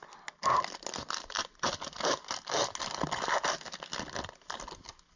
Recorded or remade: recorded